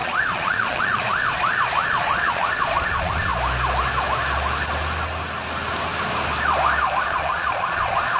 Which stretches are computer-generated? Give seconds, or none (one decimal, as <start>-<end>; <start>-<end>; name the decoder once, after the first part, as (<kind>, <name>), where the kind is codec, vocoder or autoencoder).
0.0-3.3 (vocoder, Vocos); 7.0-8.2